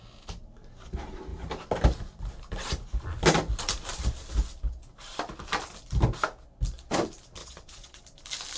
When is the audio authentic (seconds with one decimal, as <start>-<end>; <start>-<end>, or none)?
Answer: 0.0-7.4; 8.0-8.6